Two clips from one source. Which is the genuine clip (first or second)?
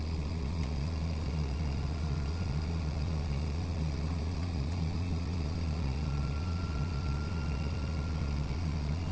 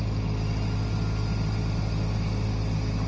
second